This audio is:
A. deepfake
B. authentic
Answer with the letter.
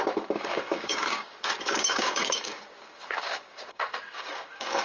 A